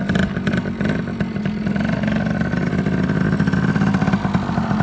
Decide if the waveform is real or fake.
real